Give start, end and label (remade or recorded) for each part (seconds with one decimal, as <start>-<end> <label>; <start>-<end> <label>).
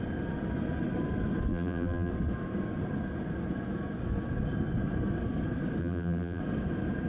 0.0-1.5 recorded; 1.5-2.1 remade; 2.1-5.8 recorded; 5.8-6.4 remade; 6.4-7.1 recorded